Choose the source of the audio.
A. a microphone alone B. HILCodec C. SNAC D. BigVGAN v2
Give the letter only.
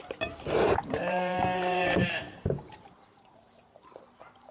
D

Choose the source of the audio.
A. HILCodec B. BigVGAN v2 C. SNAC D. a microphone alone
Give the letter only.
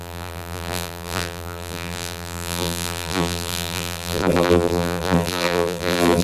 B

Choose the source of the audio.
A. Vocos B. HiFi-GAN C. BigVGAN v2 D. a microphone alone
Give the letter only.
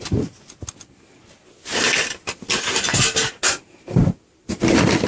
D